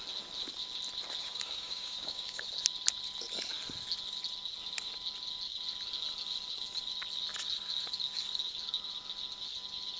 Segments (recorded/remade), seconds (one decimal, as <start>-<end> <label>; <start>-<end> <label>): 0.0-1.2 recorded; 1.2-2.5 remade; 2.5-10.0 recorded